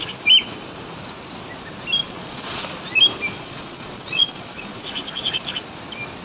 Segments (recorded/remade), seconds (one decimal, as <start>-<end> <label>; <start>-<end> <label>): 0.0-2.0 recorded; 2.0-2.6 remade; 2.6-3.3 recorded; 3.3-5.4 remade; 5.4-6.2 recorded